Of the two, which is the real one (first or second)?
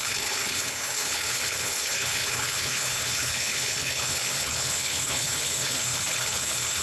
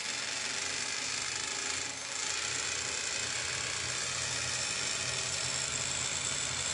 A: second